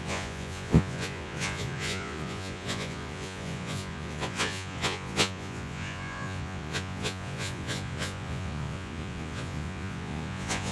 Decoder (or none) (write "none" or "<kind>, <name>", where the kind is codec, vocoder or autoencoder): vocoder, Vocos